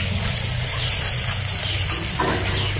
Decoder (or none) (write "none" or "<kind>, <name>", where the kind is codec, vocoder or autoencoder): none